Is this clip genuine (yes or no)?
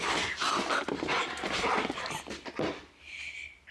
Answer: yes